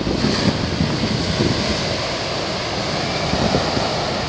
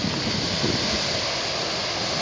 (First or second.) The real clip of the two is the first